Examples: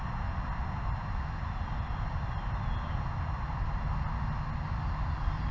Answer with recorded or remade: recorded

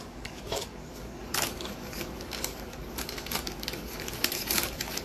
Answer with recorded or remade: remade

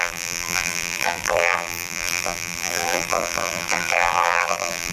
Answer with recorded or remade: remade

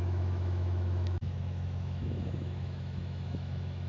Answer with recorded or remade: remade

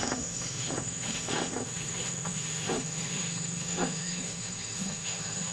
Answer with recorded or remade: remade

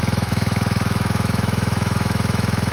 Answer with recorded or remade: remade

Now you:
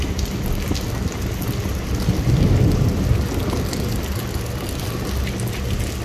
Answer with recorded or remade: recorded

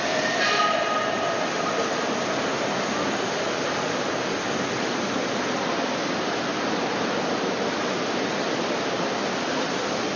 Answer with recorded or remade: recorded